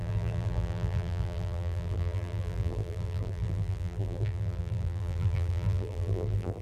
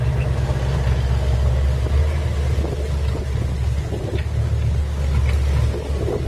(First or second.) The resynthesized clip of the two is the first